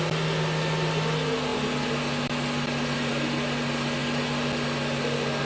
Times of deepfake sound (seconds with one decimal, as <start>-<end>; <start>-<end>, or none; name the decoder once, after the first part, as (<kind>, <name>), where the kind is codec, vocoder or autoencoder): none